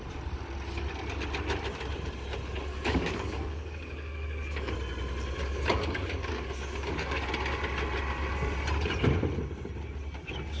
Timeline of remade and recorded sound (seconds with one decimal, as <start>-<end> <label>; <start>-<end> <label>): 0.0-2.7 recorded; 2.7-4.7 remade; 4.7-5.4 recorded; 5.4-7.3 remade; 7.3-10.6 recorded